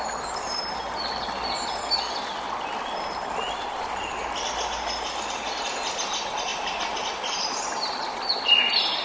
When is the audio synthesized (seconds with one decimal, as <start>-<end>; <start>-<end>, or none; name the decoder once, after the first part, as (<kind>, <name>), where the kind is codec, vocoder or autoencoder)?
none